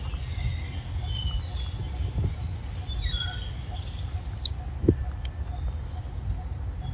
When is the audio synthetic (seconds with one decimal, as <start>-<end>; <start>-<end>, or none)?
none